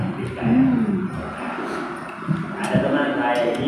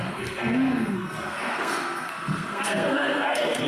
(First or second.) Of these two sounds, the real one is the first